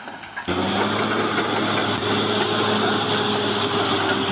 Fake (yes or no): no